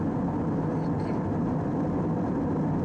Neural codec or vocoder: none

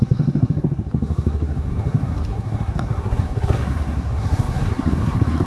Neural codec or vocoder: codec, SNAC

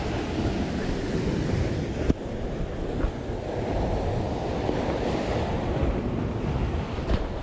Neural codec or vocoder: none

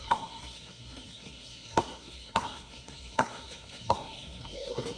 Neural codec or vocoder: codec, SNAC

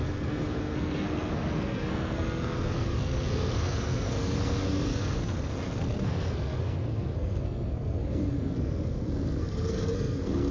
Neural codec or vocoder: codec, SNAC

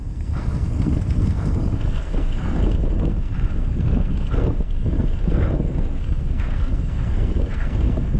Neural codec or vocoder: codec, SNAC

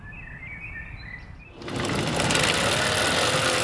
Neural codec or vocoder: none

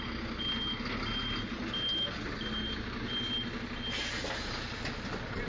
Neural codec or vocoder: none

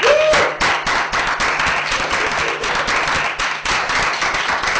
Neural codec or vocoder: none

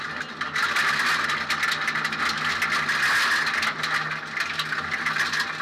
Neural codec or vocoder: none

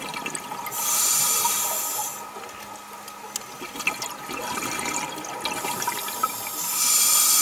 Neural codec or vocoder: none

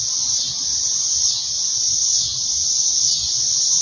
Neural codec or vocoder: none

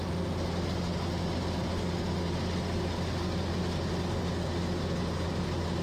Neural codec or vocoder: none